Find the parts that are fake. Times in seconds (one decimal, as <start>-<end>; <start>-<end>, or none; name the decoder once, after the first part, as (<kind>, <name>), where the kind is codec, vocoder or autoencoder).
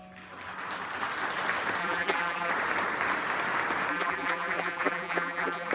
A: 1.8-2.5 (vocoder, BigVGAN v2); 3.9-5.7